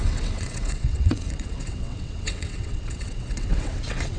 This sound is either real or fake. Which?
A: fake